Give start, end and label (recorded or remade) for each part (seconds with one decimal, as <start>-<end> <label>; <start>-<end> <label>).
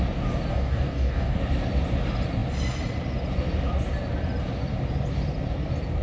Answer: 0.0-0.5 recorded; 0.5-1.4 remade; 1.4-6.0 recorded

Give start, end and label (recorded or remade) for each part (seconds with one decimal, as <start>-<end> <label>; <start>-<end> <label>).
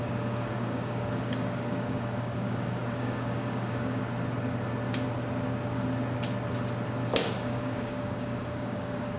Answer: 0.0-4.0 remade; 4.0-7.2 recorded; 7.2-9.2 remade